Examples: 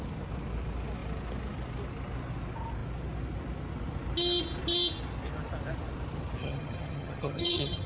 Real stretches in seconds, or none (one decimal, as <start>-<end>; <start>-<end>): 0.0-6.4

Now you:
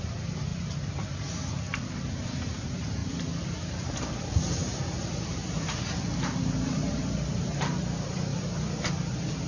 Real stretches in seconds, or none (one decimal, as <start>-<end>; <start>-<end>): 0.5-2.1; 3.0-5.0

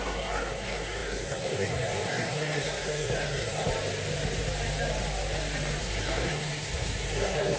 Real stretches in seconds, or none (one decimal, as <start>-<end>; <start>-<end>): 3.7-5.8

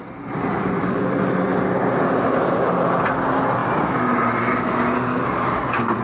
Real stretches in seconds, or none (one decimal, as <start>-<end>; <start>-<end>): 0.0-6.0

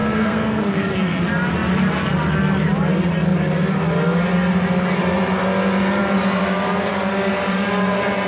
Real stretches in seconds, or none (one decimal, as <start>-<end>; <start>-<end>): 1.2-8.3